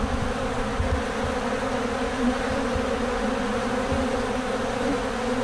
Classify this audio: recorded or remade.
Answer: recorded